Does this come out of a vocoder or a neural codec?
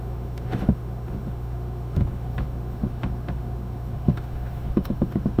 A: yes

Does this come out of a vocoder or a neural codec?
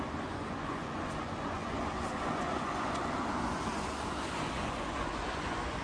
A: yes